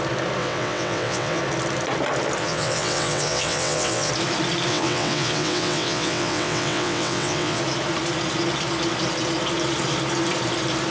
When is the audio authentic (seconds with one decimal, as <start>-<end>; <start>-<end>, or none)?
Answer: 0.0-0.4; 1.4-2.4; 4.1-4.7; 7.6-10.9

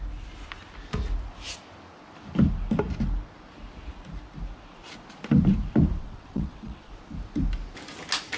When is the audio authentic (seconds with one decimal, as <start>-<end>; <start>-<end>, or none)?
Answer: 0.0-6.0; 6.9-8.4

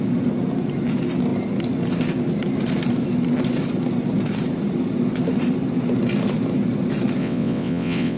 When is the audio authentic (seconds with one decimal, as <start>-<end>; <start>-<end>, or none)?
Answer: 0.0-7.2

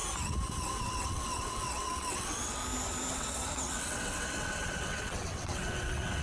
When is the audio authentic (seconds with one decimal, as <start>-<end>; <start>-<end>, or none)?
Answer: 0.0-0.5; 2.6-3.1

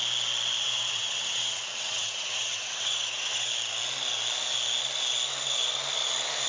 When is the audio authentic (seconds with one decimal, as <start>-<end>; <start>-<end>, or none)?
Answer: 0.0-0.6; 3.5-6.5

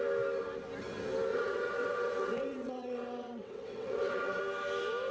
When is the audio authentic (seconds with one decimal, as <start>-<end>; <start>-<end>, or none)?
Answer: 0.0-1.3; 4.4-5.1

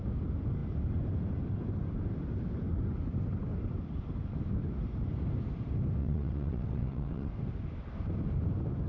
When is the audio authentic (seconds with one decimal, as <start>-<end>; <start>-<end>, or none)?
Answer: 0.0-6.0; 7.3-8.9